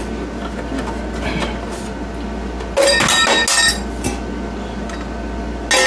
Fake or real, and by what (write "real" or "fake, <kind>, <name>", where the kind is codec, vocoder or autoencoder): real